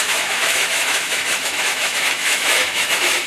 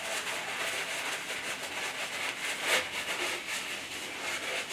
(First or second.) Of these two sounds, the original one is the second